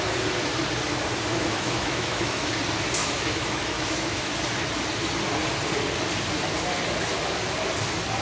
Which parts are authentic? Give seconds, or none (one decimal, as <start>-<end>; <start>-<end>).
0.0-1.3; 2.5-3.0; 4.3-8.2